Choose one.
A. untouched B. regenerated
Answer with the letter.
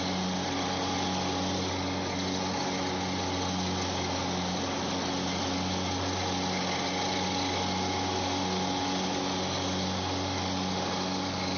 A